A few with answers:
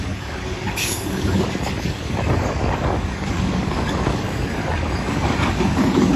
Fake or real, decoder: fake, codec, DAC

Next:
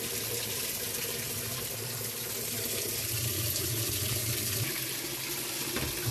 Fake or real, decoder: real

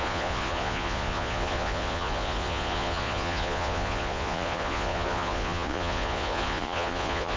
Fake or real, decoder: fake, vocoder, Vocos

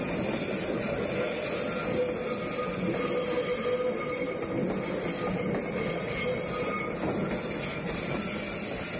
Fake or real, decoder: real